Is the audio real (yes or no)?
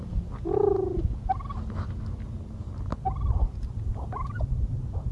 yes